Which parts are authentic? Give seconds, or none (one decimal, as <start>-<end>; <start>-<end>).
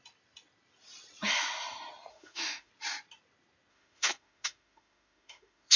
0.0-2.1; 2.7-3.7